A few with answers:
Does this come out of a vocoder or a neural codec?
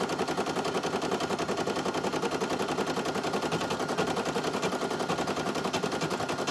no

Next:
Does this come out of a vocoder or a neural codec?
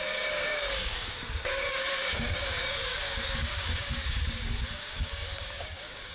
yes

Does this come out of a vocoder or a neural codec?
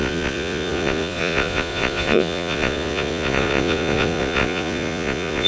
yes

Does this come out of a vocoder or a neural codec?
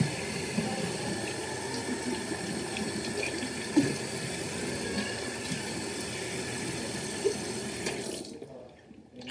no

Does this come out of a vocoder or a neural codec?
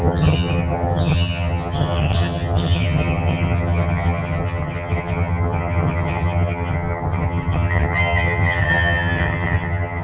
yes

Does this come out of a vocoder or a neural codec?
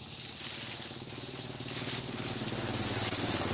no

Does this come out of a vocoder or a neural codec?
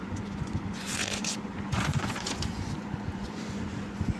yes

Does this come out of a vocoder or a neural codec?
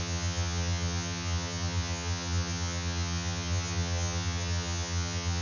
yes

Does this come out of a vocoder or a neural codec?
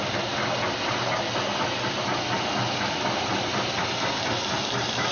no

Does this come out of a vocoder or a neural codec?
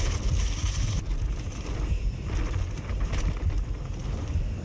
no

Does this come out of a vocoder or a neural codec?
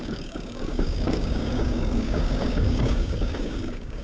yes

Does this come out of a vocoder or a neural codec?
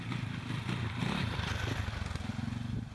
no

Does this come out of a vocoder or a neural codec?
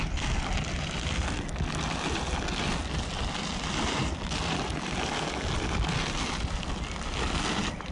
no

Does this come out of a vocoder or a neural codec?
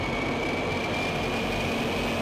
no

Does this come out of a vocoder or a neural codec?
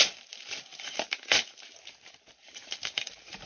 yes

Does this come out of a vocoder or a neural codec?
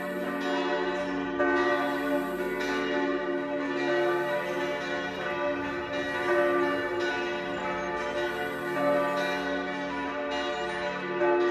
no